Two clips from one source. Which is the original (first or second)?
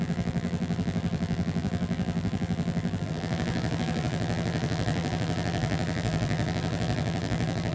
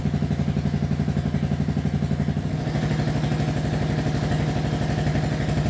second